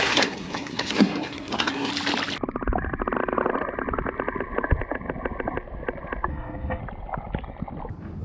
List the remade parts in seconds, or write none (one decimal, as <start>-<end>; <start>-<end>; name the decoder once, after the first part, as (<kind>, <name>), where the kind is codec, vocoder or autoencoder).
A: 0.0-1.9 (codec, SNAC); 6.3-6.8